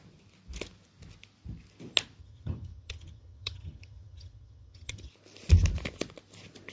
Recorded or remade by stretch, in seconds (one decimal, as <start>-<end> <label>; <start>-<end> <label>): 0.0-2.2 recorded; 2.2-5.1 remade; 5.1-6.7 recorded